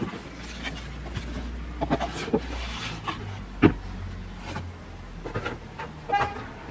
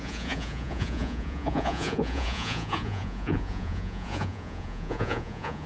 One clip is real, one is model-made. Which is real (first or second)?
first